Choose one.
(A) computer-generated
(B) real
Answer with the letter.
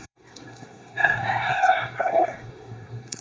A